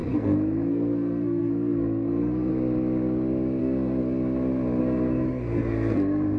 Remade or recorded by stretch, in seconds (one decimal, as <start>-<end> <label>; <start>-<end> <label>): 0.0-2.5 remade; 2.5-3.6 recorded; 3.6-4.0 remade; 4.0-4.8 recorded; 4.8-6.4 remade